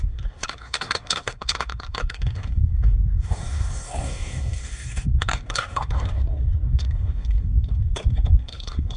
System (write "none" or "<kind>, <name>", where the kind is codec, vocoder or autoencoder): codec, SNAC